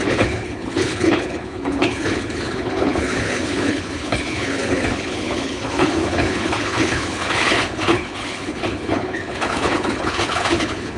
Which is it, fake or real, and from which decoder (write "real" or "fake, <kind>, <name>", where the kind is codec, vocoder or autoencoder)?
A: fake, codec, HILCodec